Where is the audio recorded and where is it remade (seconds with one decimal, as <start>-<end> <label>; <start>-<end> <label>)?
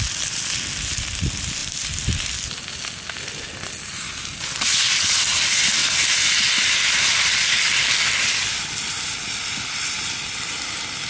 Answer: 0.0-1.6 recorded; 1.6-2.3 remade; 2.3-4.3 recorded; 4.3-5.2 remade; 5.2-11.1 recorded